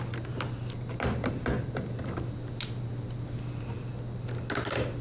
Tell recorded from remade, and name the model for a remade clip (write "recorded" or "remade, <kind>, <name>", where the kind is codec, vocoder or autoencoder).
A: recorded